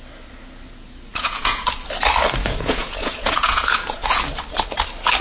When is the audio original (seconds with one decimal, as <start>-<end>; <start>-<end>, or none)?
0.0-1.1; 1.7-2.4; 4.2-5.2